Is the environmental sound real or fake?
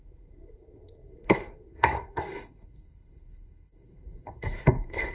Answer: fake